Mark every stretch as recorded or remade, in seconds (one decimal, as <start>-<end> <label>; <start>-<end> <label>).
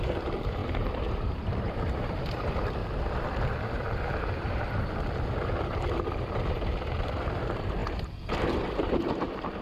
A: 0.0-2.8 remade; 2.8-6.7 recorded; 6.7-7.8 remade; 7.8-8.4 recorded; 8.4-9.6 remade